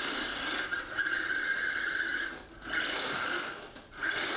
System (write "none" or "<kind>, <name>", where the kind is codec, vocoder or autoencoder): none